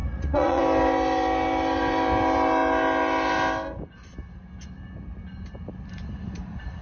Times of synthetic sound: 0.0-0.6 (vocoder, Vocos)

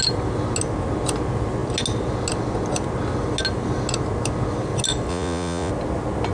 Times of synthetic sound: 5.1-5.7 (vocoder, Vocos)

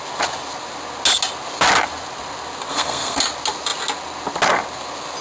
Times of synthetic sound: 2.7-3.2 (codec, SNAC)

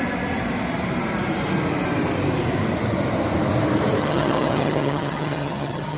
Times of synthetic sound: 4.0-6.0 (vocoder, HiFi-GAN)

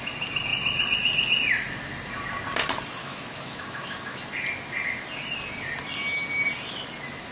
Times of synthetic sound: 3.0-4.2 (autoencoder, DAC-VAE)